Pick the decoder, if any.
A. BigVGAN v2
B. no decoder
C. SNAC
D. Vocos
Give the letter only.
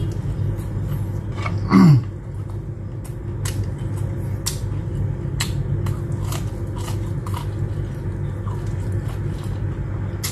B